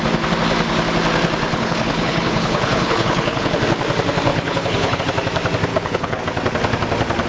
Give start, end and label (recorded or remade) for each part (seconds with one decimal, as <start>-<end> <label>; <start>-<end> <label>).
0.0-1.5 recorded; 1.5-3.5 remade; 3.5-4.3 recorded; 4.3-5.0 remade; 5.0-5.7 recorded; 5.7-6.2 remade; 6.2-7.3 recorded